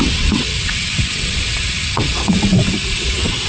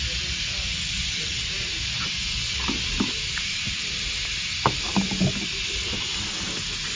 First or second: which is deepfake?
first